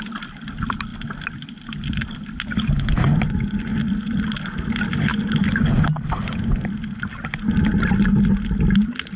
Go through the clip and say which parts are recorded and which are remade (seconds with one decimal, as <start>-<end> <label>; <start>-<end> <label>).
0.0-9.2 recorded